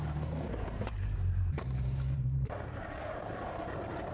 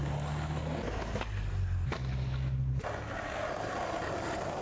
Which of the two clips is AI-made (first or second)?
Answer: first